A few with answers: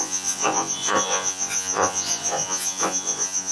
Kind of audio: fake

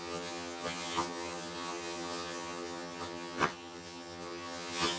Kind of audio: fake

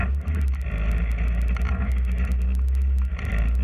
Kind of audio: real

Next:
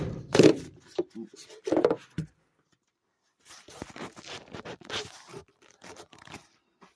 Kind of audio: fake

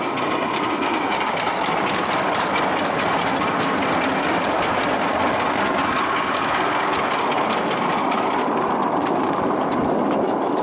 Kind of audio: real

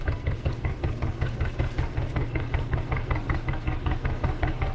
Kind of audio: fake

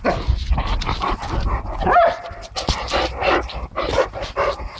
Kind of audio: real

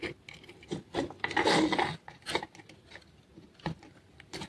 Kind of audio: real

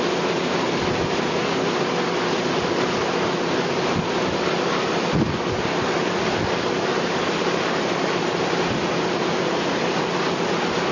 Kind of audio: real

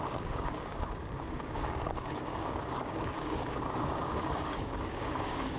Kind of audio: fake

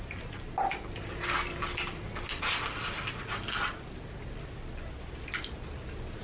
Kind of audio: real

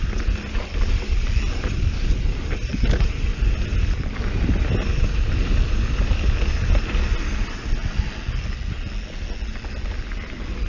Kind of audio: real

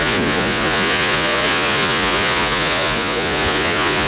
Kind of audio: fake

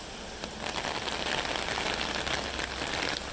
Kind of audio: real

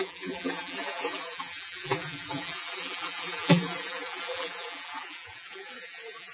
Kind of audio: fake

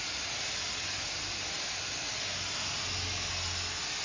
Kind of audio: real